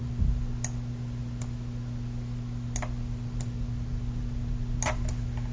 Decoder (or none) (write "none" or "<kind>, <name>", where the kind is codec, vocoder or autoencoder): none